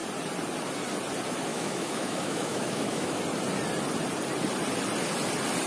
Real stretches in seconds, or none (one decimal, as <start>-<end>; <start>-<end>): 0.0-1.5; 3.2-5.7